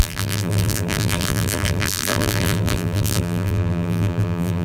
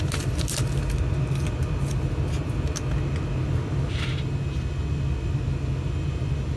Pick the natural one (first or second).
second